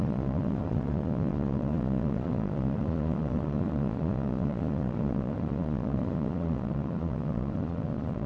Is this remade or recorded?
remade